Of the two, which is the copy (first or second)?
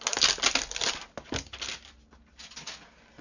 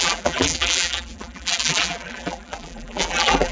second